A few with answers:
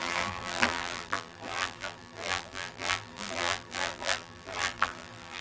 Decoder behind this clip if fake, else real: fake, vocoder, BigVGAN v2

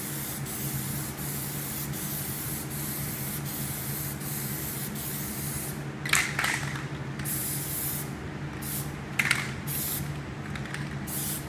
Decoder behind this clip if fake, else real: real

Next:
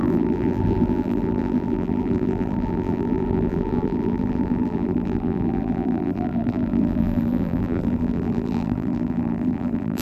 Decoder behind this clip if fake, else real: fake, vocoder, BigVGAN v2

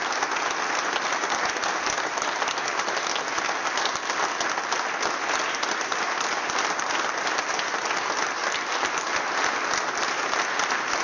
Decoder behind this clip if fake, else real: real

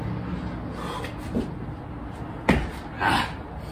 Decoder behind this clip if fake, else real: real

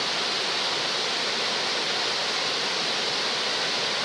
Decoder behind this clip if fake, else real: real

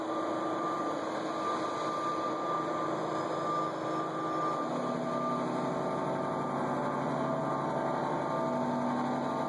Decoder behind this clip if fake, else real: real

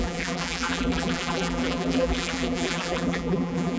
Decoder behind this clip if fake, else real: fake, vocoder, BigVGAN v2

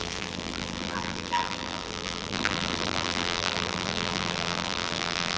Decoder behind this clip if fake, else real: fake, vocoder, BigVGAN v2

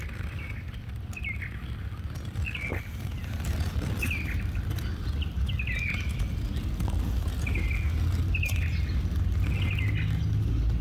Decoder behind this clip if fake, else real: real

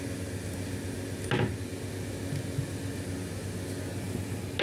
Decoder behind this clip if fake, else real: real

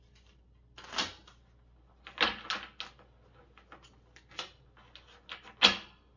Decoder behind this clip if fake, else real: real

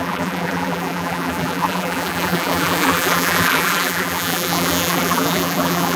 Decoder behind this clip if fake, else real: fake, vocoder, BigVGAN v2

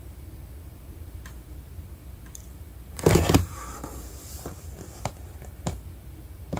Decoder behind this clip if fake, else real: fake, vocoder, BigVGAN v2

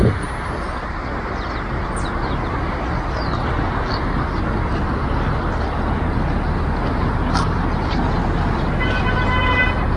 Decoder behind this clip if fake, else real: real